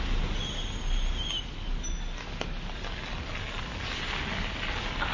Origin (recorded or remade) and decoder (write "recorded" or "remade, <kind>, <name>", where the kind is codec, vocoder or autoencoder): recorded